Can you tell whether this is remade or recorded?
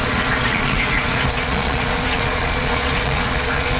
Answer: remade